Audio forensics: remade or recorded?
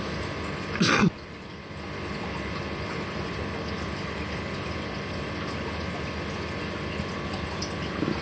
recorded